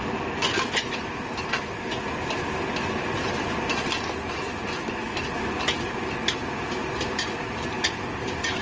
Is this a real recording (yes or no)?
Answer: yes